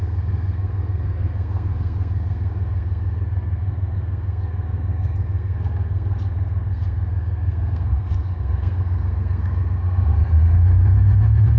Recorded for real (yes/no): no